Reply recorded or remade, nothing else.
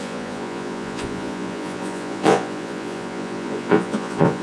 remade